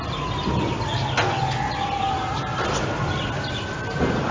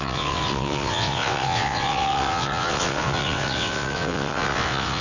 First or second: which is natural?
first